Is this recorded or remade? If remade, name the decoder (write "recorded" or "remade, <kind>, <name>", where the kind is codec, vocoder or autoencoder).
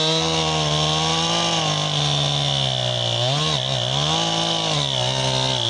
recorded